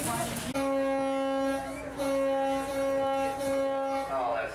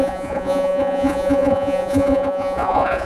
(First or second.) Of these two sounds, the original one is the first